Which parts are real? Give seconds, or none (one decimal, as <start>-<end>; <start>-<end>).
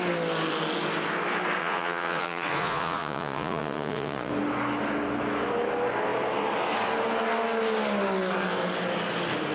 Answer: 0.0-1.6; 4.3-9.5